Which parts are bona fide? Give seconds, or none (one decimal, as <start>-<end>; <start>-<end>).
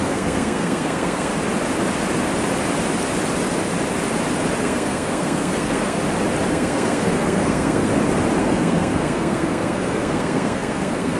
1.3-4.6; 6.0-6.5; 7.9-8.4